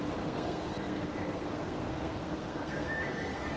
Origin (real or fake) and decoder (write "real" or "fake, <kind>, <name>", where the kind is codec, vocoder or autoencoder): fake, codec, SNAC